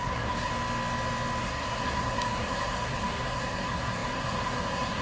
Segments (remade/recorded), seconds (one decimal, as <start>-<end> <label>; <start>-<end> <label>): 0.0-0.5 remade; 0.5-1.4 recorded; 1.4-5.0 remade